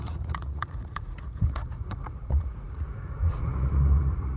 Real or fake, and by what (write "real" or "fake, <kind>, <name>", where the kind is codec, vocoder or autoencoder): fake, vocoder, Vocos